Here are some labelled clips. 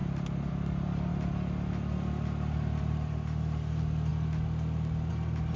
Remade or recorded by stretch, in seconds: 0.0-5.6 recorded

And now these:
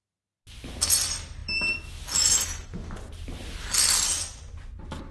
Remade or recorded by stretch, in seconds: 0.0-5.1 recorded

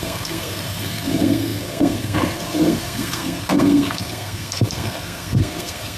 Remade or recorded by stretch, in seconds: 0.0-6.0 remade

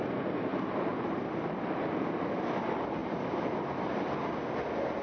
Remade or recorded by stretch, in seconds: 0.0-0.5 recorded; 0.5-2.2 remade; 2.2-3.0 recorded; 3.0-4.6 remade; 4.6-5.0 recorded

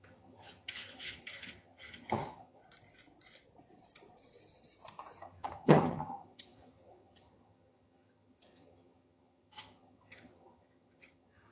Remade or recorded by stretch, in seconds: 0.0-2.6 remade; 2.6-5.2 recorded; 5.2-11.5 remade

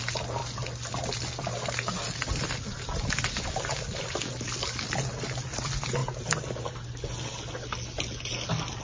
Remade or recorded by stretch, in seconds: 0.0-8.8 recorded